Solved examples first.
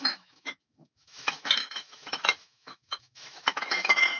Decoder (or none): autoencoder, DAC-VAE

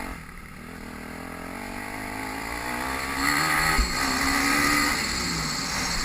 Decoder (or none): none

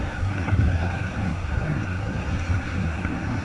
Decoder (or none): codec, SNAC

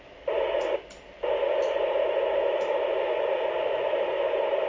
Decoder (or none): none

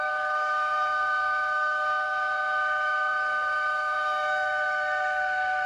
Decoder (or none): codec, SNAC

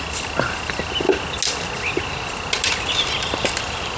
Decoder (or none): none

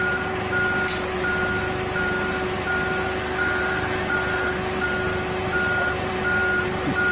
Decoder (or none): none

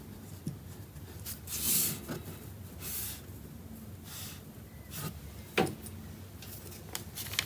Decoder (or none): none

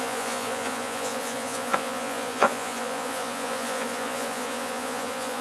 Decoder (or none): vocoder, Vocos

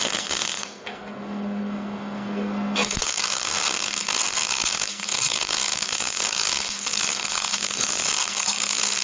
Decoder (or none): codec, SNAC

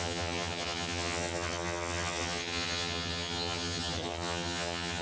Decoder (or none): vocoder, HiFi-GAN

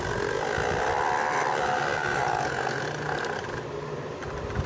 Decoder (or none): none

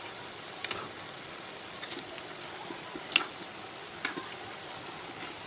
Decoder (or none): none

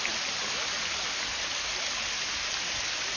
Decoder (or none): none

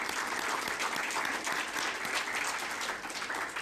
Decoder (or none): none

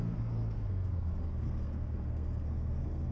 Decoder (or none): codec, SNAC